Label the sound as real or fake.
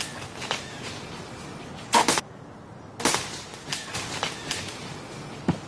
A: real